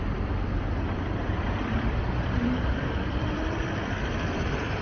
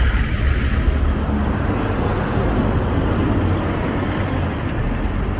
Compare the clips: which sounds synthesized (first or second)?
first